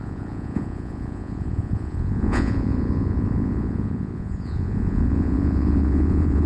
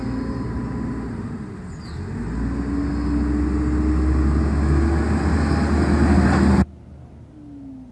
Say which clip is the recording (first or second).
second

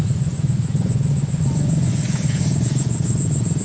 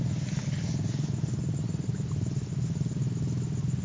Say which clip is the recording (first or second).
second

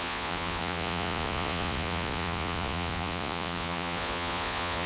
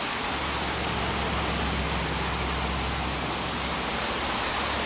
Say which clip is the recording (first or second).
second